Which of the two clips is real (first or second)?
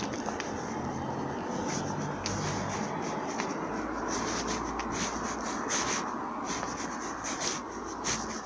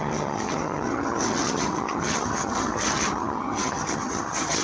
first